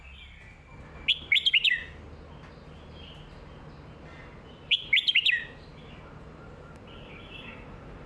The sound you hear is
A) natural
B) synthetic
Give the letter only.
A